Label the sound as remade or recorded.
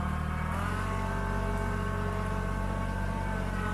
recorded